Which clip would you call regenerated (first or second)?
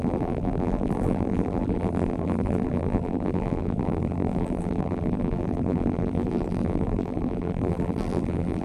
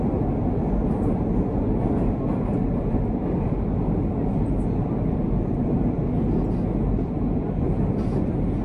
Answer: first